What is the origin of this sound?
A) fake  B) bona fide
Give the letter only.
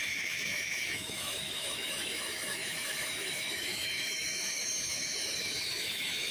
A